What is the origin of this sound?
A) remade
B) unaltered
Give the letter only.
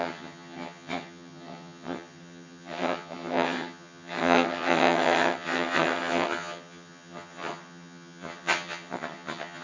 A